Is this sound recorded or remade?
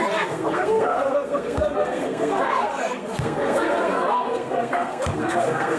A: remade